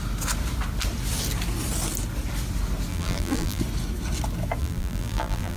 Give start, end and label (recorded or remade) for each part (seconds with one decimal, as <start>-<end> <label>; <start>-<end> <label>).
0.0-2.9 recorded; 2.9-3.6 remade; 3.6-4.6 recorded; 4.6-5.6 remade